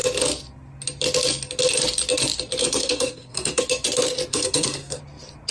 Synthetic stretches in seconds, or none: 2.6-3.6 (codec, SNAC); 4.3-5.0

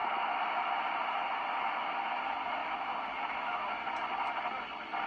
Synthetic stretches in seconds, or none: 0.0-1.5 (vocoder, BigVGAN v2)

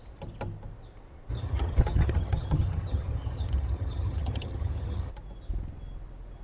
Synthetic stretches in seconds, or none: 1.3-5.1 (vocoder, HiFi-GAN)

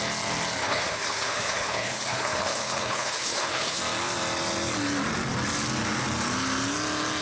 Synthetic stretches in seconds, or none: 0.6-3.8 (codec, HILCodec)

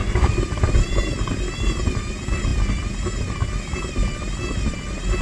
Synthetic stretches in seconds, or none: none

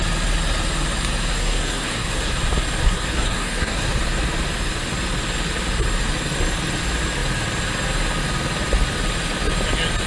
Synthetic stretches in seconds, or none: 1.3-2.3 (codec, SNAC); 2.8-3.9

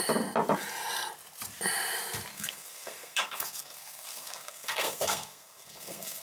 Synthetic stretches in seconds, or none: 2.3-6.2 (codec, SNAC)

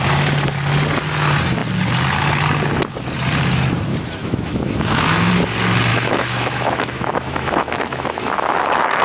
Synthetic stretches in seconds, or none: 3.9-5.3 (autoencoder, DAC-VAE); 5.9-9.0